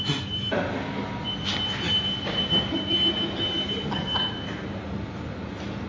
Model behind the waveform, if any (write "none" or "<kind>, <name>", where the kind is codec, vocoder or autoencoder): none